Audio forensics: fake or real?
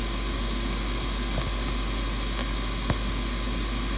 real